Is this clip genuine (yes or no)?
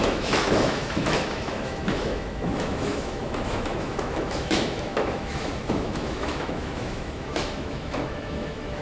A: no